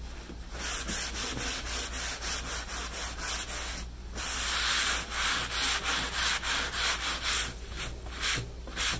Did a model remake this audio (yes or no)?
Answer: no